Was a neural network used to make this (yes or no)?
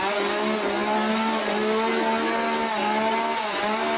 no